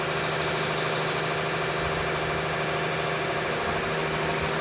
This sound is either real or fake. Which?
real